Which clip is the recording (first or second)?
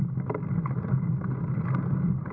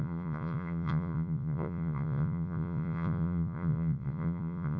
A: first